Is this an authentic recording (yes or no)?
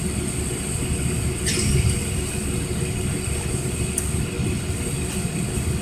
yes